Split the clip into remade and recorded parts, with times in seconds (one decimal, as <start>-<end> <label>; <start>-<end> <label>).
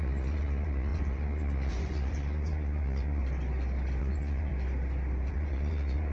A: 0.0-3.2 remade; 3.2-4.0 recorded; 4.0-4.5 remade; 4.5-5.3 recorded; 5.3-6.1 remade